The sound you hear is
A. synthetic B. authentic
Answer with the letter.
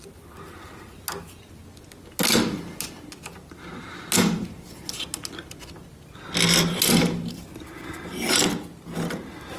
B